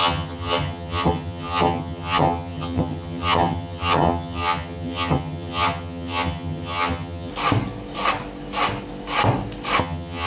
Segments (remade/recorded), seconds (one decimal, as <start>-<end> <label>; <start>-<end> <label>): 0.0-7.3 remade; 7.3-9.8 recorded; 9.8-10.3 remade